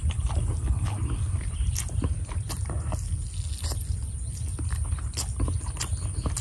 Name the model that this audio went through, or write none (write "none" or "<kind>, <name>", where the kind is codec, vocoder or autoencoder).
none